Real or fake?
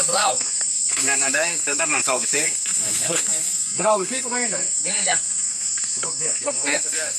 fake